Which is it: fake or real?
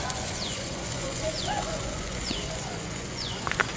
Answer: fake